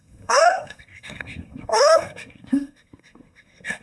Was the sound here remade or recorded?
remade